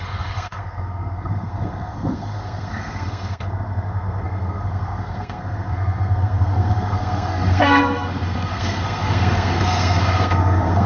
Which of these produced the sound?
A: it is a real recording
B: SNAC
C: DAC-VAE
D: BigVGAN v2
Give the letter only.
B